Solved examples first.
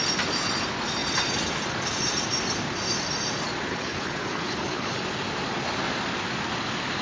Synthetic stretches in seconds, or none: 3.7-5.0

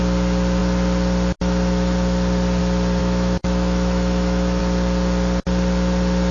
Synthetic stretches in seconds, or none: 3.0-4.6

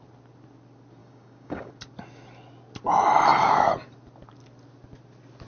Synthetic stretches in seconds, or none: 1.0-1.7